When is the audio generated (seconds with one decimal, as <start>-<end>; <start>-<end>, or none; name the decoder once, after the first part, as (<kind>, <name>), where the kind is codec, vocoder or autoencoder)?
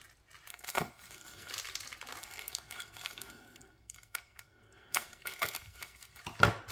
0.5-1.5 (codec, SNAC); 2.2-6.2